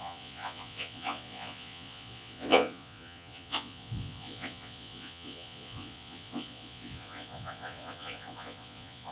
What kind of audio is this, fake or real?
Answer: fake